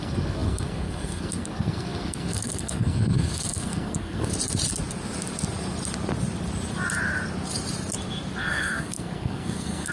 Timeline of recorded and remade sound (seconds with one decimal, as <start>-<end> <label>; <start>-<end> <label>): 0.0-4.3 remade; 4.3-8.4 recorded; 8.4-9.9 remade